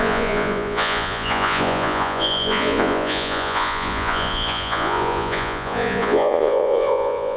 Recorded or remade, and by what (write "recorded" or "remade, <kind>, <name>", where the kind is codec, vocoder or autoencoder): remade, vocoder, Vocos